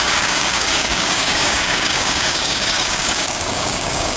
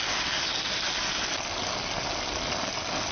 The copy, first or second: first